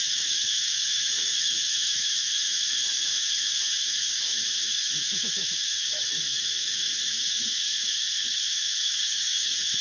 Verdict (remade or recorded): remade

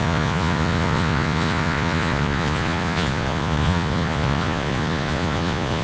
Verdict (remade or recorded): remade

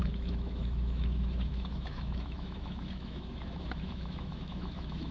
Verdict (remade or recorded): remade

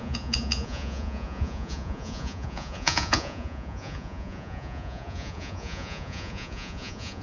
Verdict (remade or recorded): remade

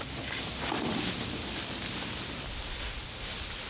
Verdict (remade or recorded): recorded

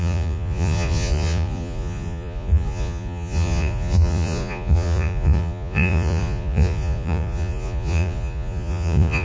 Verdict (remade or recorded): remade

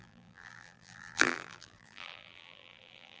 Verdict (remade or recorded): remade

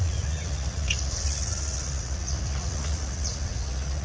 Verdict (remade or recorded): remade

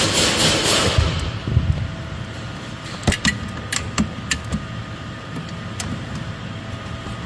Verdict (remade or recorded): recorded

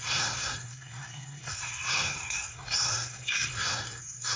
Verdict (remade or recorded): remade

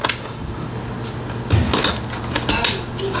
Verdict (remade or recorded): recorded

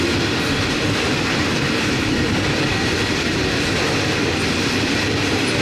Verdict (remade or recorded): recorded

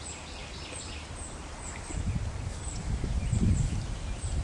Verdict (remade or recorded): recorded